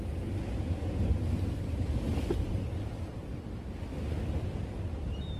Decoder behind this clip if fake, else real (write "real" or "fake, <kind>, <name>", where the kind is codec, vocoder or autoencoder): real